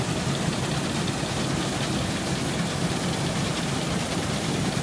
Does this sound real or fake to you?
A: real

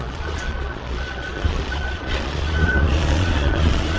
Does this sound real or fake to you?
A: fake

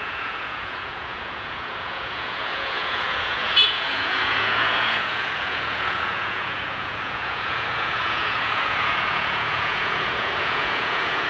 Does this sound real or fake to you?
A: fake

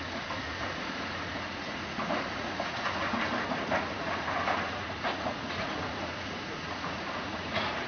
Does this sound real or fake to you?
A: fake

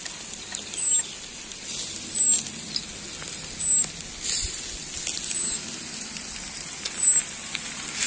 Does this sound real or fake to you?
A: real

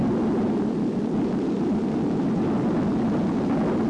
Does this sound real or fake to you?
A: real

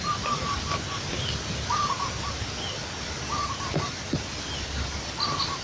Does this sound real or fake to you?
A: real